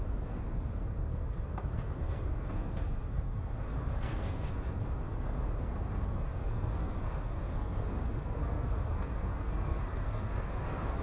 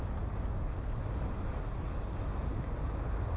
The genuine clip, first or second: second